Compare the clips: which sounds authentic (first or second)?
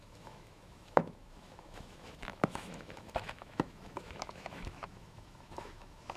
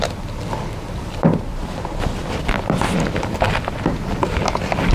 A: second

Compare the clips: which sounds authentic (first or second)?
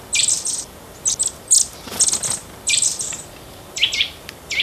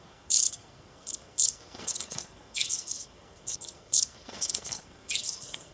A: first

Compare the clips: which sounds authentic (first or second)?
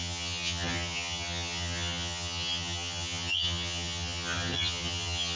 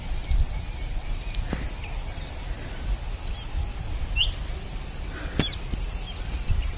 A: second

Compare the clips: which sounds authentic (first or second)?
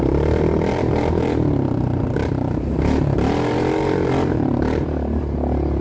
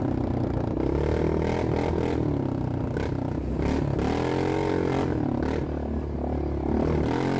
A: second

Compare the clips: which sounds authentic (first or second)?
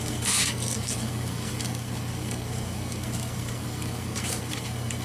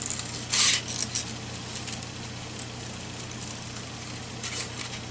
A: second